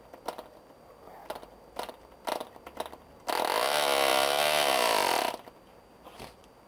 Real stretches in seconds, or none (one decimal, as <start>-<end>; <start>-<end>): 0.0-6.7